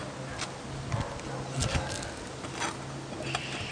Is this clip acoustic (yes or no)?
yes